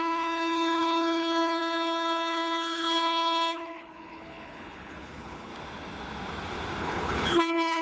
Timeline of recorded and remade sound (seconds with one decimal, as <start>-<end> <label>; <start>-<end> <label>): 0.0-5.5 remade; 5.5-6.8 recorded; 6.8-7.8 remade